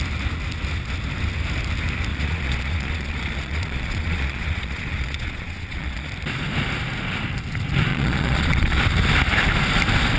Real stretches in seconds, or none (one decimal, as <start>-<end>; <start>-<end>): 0.0-2.1; 6.1-7.9; 8.8-10.2